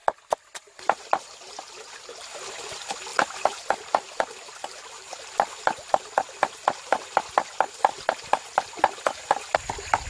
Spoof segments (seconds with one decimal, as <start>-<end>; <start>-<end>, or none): 3.1-7.2